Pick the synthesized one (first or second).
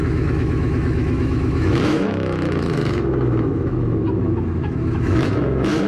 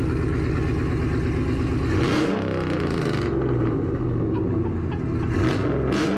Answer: first